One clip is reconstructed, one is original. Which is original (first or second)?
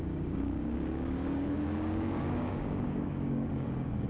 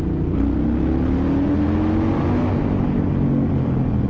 second